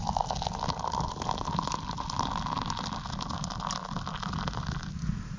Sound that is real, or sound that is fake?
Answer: real